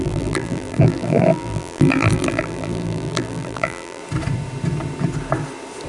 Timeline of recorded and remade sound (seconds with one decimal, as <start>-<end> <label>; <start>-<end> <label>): 0.0-4.0 remade; 4.0-5.9 recorded